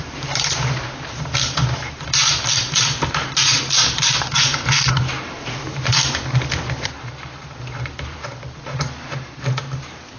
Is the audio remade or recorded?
remade